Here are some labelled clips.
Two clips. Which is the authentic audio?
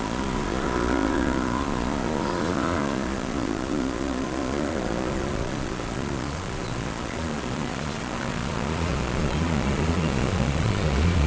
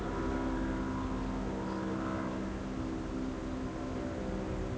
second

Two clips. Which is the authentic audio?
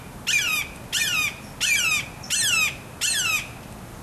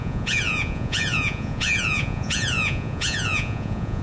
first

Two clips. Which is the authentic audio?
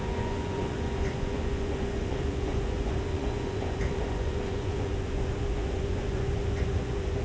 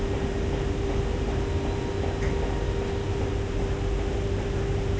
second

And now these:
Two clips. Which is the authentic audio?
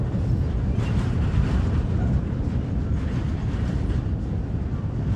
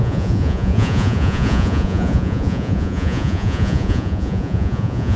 first